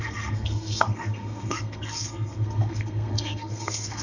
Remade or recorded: remade